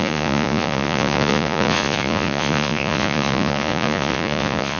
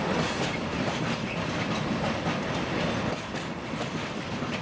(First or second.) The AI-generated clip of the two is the first